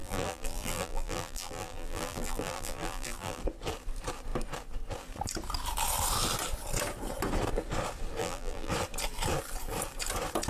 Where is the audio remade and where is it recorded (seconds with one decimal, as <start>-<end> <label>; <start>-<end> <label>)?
0.0-3.4 remade; 3.4-8.2 recorded; 8.2-8.7 remade; 8.7-10.5 recorded

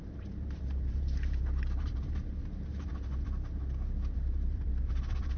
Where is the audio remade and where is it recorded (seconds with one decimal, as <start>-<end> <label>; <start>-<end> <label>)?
0.0-2.9 remade; 2.9-4.0 recorded; 4.0-4.7 remade; 4.7-5.4 recorded

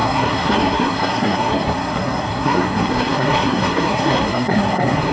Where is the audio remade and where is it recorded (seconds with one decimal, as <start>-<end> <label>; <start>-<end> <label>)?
0.0-5.1 remade